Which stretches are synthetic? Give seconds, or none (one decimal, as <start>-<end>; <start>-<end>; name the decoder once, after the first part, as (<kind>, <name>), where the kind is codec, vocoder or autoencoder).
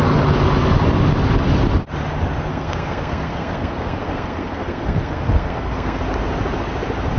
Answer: 2.5-6.0 (codec, SNAC)